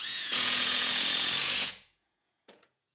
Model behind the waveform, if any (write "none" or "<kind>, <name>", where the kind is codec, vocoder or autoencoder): vocoder, Vocos